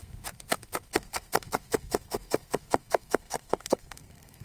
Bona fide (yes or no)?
no